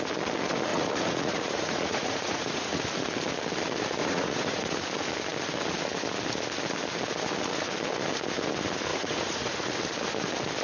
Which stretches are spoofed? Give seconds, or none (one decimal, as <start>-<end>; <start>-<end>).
0.7-2.8; 4.0-4.8; 8.9-9.7